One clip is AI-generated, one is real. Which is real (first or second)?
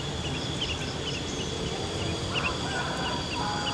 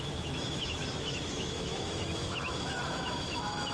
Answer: first